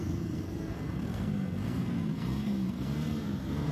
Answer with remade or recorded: remade